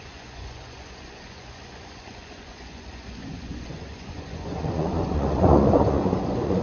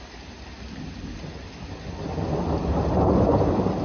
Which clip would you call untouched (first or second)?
second